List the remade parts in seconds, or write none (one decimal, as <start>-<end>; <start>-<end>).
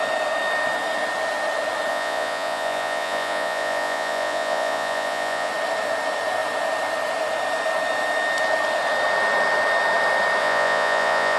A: 1.9-5.5; 10.4-11.4